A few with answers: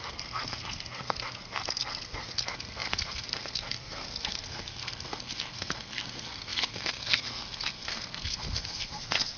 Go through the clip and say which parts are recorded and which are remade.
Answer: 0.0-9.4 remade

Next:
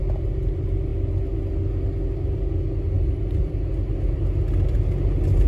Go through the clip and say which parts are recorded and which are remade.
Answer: 0.0-5.5 recorded

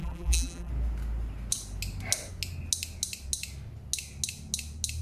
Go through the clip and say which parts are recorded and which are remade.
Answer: 0.0-0.7 remade; 0.7-5.0 recorded

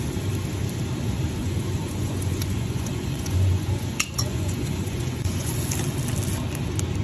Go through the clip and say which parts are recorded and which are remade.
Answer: 0.0-1.4 recorded; 1.4-5.6 remade; 5.6-7.0 recorded